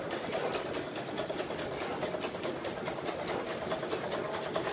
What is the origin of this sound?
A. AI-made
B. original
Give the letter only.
B